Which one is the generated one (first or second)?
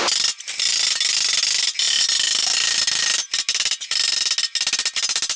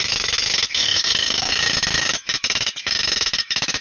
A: second